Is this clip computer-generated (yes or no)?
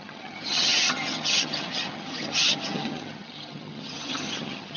yes